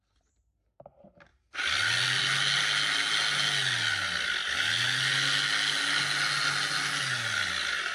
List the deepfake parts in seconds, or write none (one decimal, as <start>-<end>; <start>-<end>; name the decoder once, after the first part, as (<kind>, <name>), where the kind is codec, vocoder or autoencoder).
none